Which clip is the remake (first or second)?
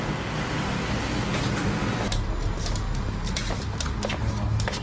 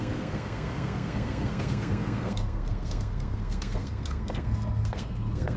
second